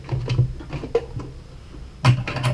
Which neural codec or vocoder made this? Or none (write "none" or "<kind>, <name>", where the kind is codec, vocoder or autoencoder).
none